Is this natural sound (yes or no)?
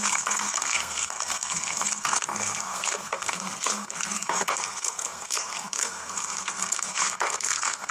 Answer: no